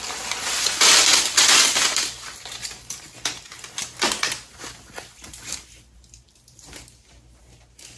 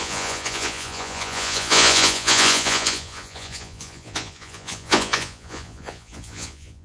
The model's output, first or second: second